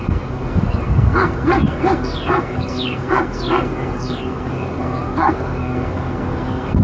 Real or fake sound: fake